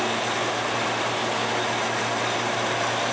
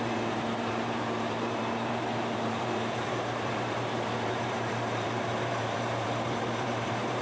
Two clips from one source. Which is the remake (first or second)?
second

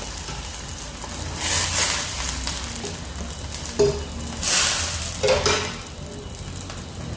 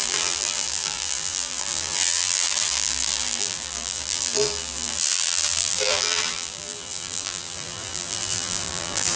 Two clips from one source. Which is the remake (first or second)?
second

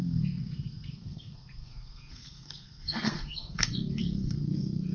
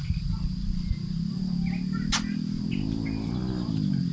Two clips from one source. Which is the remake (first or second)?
first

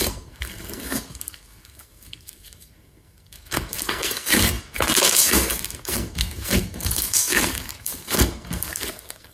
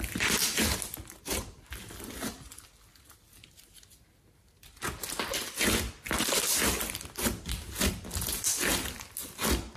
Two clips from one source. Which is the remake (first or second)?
first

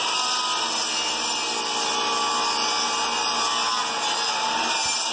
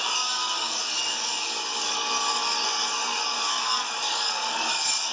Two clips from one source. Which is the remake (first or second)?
second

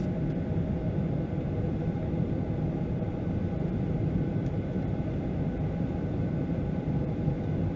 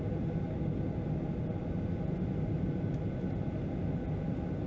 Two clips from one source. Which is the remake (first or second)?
first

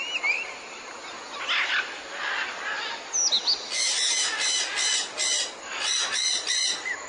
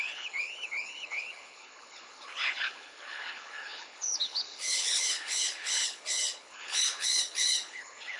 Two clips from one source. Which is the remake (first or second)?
second